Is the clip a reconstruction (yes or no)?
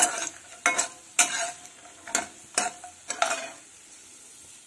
no